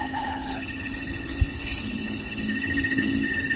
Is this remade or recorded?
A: remade